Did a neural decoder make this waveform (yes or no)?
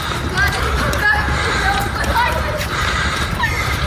no